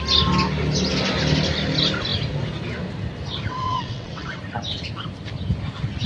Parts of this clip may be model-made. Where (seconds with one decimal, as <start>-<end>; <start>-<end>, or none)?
3.5-4.4